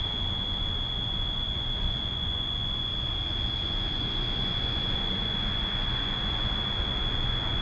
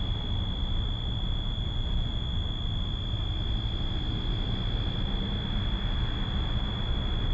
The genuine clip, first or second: second